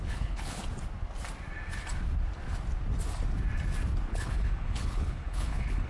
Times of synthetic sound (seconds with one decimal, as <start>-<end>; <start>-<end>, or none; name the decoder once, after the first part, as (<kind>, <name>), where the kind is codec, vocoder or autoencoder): 0.0-0.6 (codec, HILCodec); 4.1-5.9